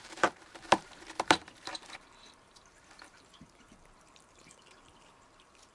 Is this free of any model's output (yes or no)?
no